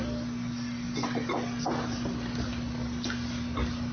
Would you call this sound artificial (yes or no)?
no